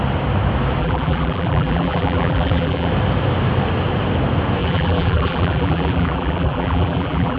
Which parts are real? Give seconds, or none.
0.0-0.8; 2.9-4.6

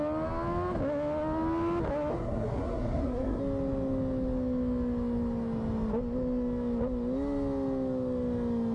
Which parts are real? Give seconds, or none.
0.0-2.1; 3.4-8.7

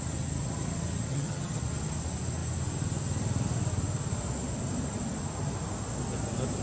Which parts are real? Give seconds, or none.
0.0-1.1; 1.6-6.6

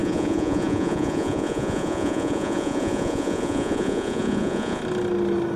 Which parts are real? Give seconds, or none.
4.8-5.6

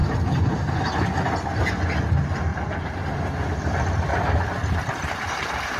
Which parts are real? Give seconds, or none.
0.7-4.1; 5.3-5.8

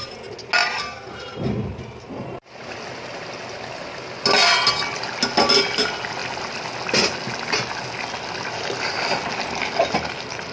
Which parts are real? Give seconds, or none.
0.0-10.5

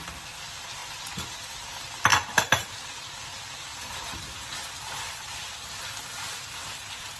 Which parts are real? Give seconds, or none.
0.0-3.7; 4.4-7.2